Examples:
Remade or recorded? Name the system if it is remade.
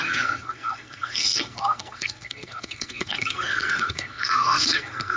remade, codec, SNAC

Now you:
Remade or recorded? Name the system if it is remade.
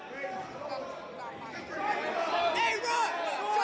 recorded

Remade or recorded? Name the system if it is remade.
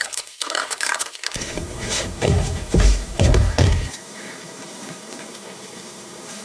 remade, codec, SNAC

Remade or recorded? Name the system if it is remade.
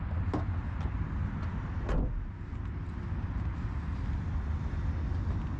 recorded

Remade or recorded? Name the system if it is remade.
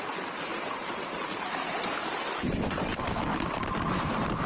recorded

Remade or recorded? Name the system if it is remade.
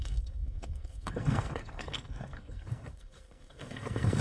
remade, codec, SNAC